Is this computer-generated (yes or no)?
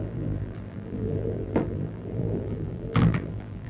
yes